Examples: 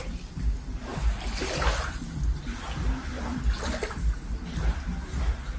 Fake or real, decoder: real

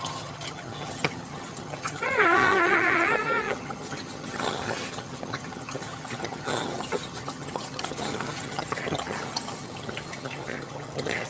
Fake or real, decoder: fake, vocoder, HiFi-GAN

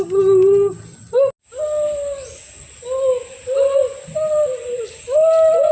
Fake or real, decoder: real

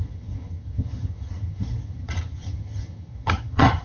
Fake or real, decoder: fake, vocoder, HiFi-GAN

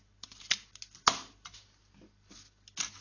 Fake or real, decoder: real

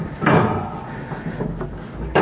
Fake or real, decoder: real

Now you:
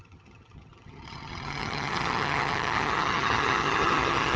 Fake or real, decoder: fake, vocoder, HiFi-GAN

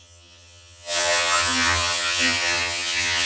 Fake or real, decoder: fake, vocoder, HiFi-GAN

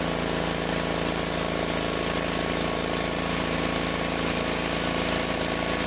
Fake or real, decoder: real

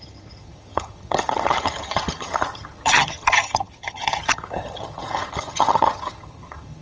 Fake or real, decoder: fake, vocoder, HiFi-GAN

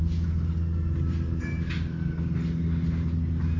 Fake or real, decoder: real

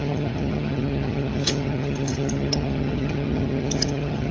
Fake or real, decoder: fake, vocoder, HiFi-GAN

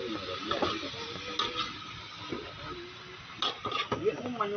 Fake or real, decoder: real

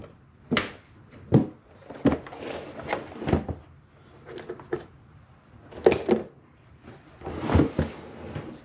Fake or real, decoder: real